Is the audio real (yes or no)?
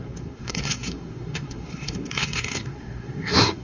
no